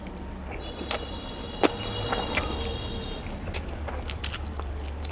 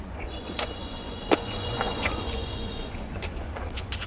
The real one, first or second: first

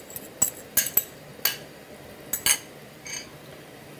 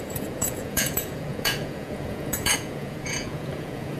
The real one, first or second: first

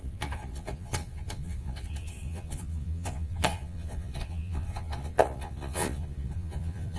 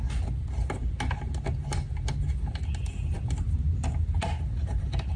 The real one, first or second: second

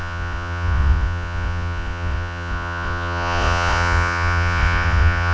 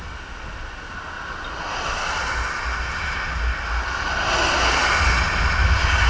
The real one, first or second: second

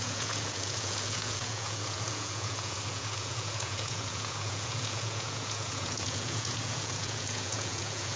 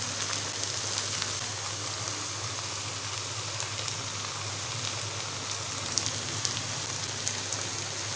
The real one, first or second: second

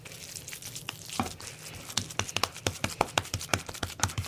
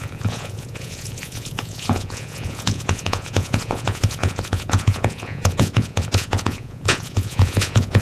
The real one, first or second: first